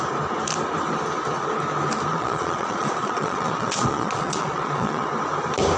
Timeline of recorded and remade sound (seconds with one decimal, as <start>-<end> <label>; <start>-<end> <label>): 0.0-2.1 recorded; 2.1-5.1 remade; 5.1-5.8 recorded